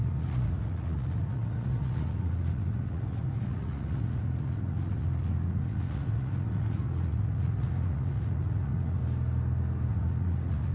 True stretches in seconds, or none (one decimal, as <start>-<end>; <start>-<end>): 9.0-9.9